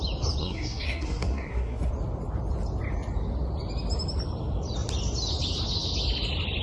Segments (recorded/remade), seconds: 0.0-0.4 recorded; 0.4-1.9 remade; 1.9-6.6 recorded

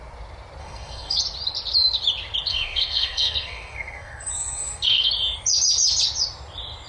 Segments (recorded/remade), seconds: 0.0-0.6 recorded; 0.6-1.2 remade; 1.2-2.5 recorded; 2.5-5.1 remade; 5.1-6.9 recorded

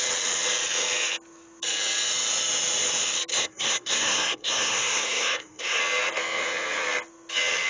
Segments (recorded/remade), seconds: 0.0-3.3 recorded; 3.3-5.8 remade; 5.8-7.7 recorded

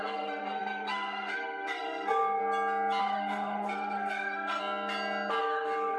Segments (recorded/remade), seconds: 0.0-2.4 remade; 2.4-3.0 recorded; 3.0-4.6 remade; 4.6-5.4 recorded; 5.4-6.0 remade

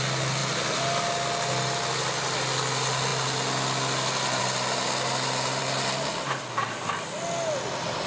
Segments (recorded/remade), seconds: 0.0-8.1 recorded

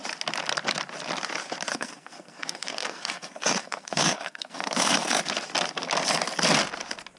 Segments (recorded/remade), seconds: 0.0-1.7 recorded; 1.7-5.2 remade; 5.2-7.2 recorded

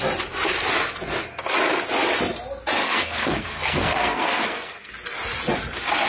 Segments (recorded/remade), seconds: 0.0-2.8 recorded; 2.8-4.9 remade; 4.9-6.1 recorded